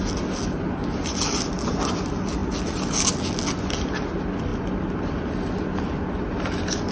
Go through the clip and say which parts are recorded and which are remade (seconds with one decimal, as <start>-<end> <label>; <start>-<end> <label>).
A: 0.0-6.9 recorded